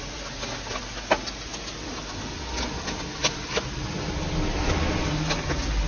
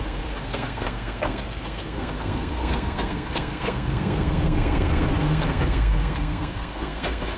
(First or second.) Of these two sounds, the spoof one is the second